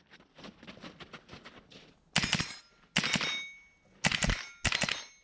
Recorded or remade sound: recorded